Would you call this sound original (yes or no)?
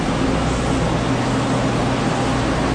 yes